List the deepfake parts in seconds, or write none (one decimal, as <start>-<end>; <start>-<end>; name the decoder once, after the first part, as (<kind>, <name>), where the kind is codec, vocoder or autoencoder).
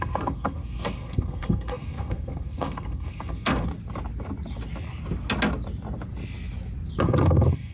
0.0-3.7 (codec, SNAC); 7.0-7.7